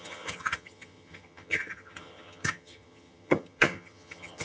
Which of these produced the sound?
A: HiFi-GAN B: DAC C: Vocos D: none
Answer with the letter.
A